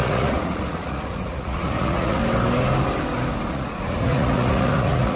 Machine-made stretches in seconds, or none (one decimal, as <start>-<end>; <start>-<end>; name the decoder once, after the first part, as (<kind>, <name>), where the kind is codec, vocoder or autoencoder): 0.0-2.2 (vocoder, Vocos); 3.5-5.2